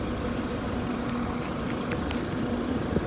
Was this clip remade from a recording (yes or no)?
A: no